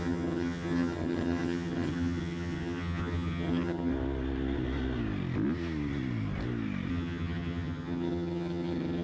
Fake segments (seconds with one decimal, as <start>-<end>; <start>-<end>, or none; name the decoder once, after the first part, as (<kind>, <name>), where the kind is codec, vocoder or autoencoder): 0.0-3.9 (vocoder, HiFi-GAN); 6.9-9.0